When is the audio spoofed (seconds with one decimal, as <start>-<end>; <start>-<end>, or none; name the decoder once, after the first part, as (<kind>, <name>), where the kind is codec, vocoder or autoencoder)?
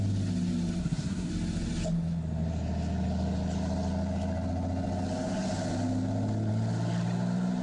0.8-1.3 (codec, SNAC)